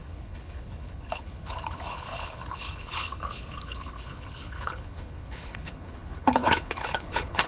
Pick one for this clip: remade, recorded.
remade